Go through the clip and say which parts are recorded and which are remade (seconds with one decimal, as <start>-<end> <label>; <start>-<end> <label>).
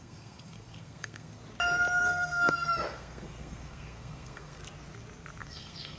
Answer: 0.0-1.4 remade; 1.4-2.0 recorded; 2.0-4.6 remade; 4.6-5.4 recorded; 5.4-6.0 remade